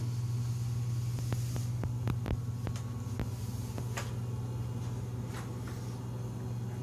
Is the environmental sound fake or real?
real